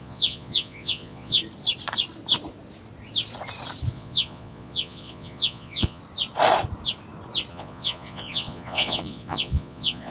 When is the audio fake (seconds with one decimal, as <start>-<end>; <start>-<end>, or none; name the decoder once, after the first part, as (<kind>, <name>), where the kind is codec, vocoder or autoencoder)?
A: 0.0-1.4 (vocoder, Vocos); 3.9-6.0; 7.5-10.1